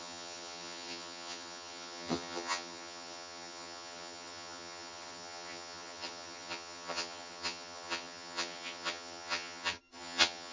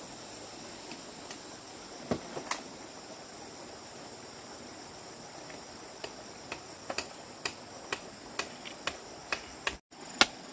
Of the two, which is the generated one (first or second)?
first